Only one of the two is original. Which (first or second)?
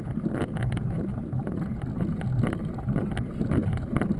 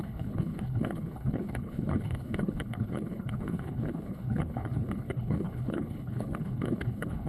first